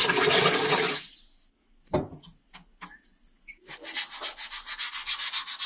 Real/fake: real